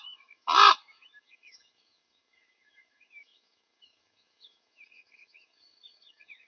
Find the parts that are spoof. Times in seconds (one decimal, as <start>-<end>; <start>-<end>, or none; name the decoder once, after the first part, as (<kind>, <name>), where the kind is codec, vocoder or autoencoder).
0.0-6.5 (autoencoder, DAC-VAE)